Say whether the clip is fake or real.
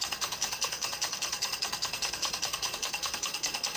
fake